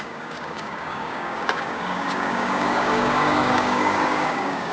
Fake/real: fake